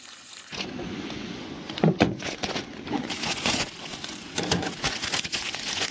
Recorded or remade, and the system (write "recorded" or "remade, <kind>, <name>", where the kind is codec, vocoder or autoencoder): remade, vocoder, Vocos